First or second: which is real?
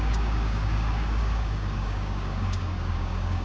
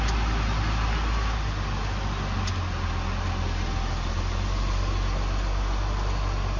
second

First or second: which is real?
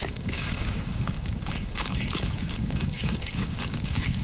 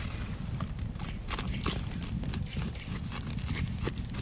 second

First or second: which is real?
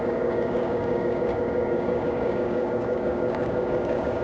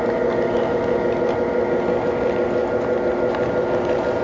second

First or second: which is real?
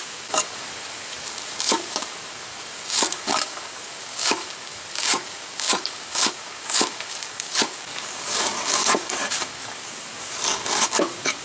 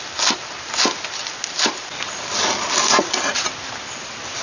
second